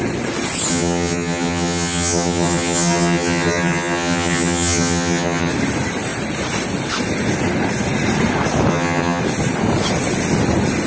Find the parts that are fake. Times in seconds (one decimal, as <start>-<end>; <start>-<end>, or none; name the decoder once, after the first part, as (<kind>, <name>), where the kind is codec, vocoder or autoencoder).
0.7-5.5 (vocoder, HiFi-GAN); 8.7-9.2